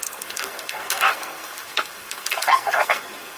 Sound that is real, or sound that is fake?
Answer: fake